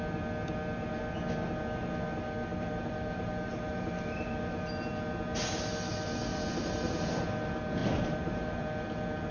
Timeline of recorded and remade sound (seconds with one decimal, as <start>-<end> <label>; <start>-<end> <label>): 0.0-2.5 recorded; 2.5-4.8 remade; 4.8-6.3 recorded; 6.3-7.2 remade; 7.2-7.8 recorded; 7.8-8.6 remade; 8.6-9.3 recorded